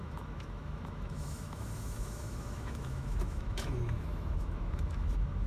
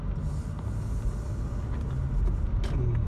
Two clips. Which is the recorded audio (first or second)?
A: second